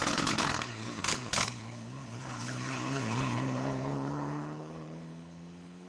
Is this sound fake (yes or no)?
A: yes